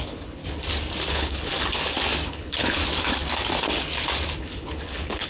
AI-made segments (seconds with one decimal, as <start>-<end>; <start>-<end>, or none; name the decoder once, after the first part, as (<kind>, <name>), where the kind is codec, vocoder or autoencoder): 0.0-0.4 (codec, HILCodec); 1.1-1.5; 2.3-2.8; 4.4-5.3